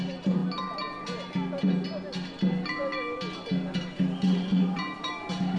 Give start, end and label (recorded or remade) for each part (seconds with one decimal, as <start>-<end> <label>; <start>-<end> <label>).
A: 0.0-4.5 recorded; 4.5-5.1 remade; 5.1-5.6 recorded